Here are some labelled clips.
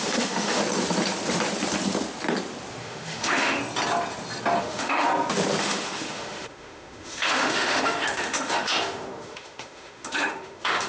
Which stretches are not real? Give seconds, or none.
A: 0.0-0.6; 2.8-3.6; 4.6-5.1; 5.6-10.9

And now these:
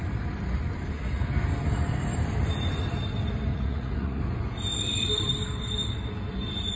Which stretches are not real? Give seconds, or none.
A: 3.5-4.2

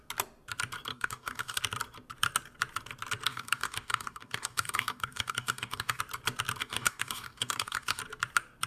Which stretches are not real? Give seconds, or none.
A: 0.9-1.6; 3.3-6.0; 6.6-8.0

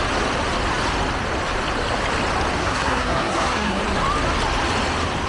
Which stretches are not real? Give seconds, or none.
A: 2.6-3.8

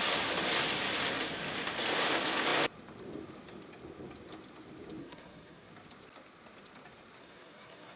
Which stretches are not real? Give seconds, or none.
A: 5.0-5.7; 7.2-8.0

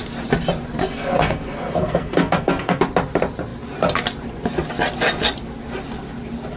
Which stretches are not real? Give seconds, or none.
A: 0.8-2.8

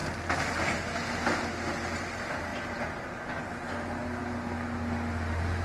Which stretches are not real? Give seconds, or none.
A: none

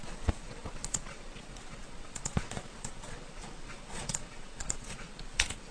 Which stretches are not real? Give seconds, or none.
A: 0.0-5.7